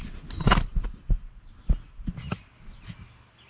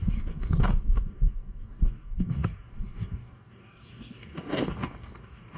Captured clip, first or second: first